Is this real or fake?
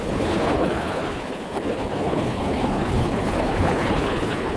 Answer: fake